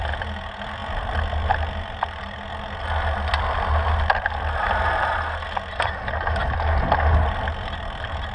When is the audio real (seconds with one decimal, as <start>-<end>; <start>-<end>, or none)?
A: 0.0-8.3